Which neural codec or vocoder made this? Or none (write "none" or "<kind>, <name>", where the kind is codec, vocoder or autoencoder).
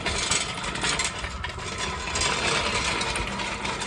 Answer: none